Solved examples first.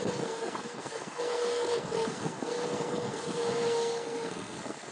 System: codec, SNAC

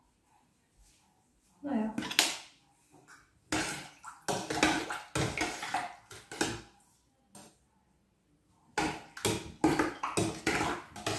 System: none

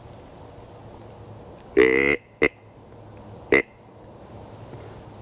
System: none